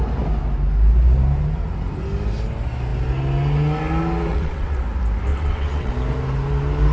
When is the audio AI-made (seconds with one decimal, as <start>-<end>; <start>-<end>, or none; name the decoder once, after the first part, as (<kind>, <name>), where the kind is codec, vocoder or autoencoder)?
4.3-4.8 (vocoder, WaveNeXt); 5.3-5.9